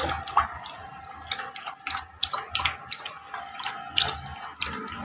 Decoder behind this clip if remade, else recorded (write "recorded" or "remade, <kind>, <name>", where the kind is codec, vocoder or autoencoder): recorded